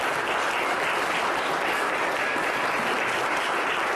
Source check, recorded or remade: recorded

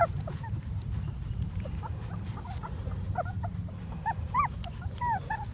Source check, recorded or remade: recorded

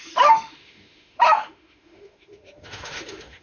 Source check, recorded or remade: remade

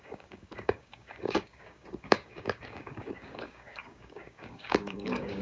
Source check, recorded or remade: remade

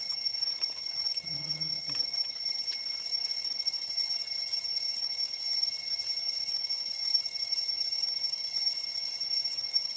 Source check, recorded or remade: remade